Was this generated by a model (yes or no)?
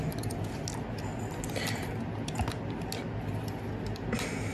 no